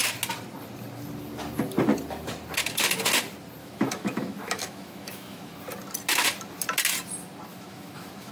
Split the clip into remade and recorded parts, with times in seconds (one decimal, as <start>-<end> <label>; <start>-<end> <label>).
0.0-3.6 recorded; 3.6-5.5 remade; 5.5-7.5 recorded; 7.5-8.3 remade